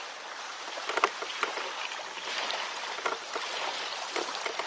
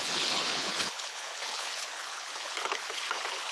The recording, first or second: first